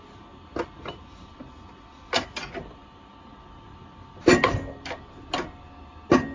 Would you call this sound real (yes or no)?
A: yes